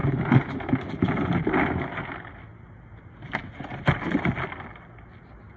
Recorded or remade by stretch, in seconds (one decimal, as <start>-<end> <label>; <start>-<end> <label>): 0.0-5.6 recorded